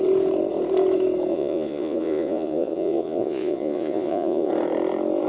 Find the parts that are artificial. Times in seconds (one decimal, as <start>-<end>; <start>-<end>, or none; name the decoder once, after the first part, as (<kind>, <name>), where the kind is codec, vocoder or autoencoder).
1.3-4.5 (vocoder, Vocos)